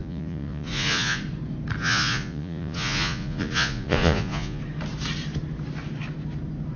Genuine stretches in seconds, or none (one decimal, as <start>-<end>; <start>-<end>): 1.2-1.8; 4.6-6.8